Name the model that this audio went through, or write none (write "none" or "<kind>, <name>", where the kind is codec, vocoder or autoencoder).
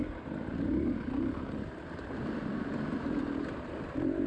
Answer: none